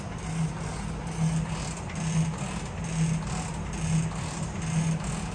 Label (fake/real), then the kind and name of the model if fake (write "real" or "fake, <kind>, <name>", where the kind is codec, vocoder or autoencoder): real